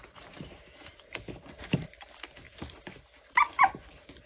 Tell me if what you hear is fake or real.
fake